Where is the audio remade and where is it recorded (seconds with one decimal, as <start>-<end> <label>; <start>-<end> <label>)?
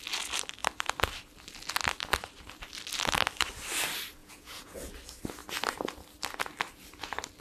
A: 0.0-4.2 recorded; 4.2-4.9 remade; 4.9-7.4 recorded